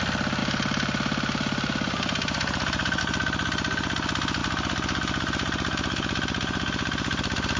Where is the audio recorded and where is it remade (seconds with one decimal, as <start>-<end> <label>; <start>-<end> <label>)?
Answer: 0.0-0.4 recorded; 0.4-3.0 remade; 3.0-4.4 recorded; 4.4-7.6 remade